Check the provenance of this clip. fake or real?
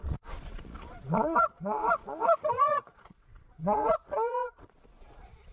fake